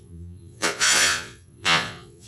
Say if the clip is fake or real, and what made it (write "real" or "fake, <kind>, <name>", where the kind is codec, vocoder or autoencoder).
fake, vocoder, Vocos